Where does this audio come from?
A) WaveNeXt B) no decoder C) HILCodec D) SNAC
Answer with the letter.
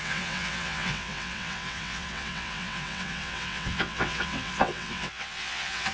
A